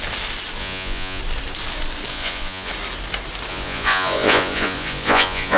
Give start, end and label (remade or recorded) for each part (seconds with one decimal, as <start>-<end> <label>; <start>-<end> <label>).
0.0-0.6 recorded; 0.6-1.2 remade; 1.2-2.1 recorded; 2.1-2.7 remade; 2.7-3.5 recorded; 3.5-5.6 remade